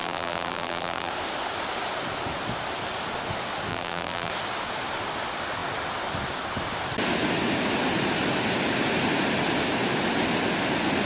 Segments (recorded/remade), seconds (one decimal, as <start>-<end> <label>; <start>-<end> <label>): 0.0-1.1 remade; 1.1-3.7 recorded; 3.7-4.3 remade; 4.3-11.1 recorded